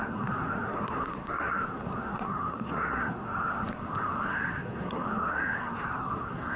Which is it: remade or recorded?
remade